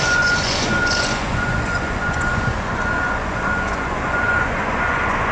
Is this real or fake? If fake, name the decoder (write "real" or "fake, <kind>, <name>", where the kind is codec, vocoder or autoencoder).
fake, vocoder, Vocos